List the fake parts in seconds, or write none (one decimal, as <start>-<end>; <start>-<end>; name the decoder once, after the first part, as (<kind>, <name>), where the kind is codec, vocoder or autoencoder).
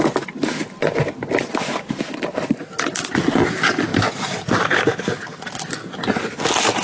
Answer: none